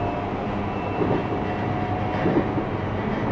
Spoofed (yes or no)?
no